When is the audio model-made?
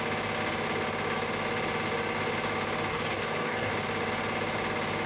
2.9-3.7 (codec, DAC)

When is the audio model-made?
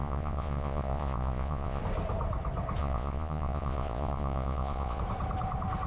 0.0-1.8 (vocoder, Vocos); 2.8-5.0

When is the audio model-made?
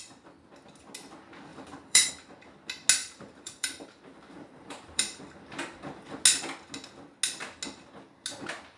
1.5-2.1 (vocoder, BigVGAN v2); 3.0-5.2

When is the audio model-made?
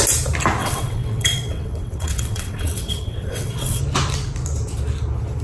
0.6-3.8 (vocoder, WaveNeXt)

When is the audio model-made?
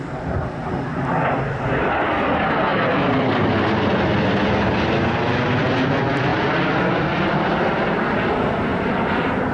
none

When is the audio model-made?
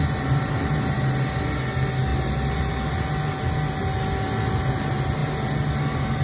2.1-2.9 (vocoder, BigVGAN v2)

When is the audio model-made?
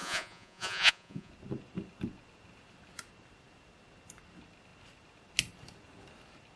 0.0-1.3 (vocoder, Vocos)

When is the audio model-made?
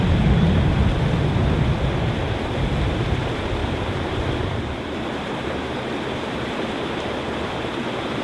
3.6-8.2 (vocoder, BigVGAN v2)